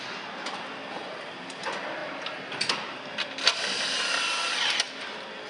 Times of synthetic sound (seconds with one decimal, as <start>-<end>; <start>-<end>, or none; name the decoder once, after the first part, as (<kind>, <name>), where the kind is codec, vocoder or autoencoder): 0.8-1.6 (vocoder, BigVGAN v2)